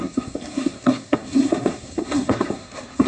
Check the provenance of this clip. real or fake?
fake